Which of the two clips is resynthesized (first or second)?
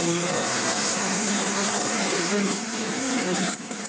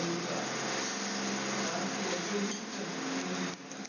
first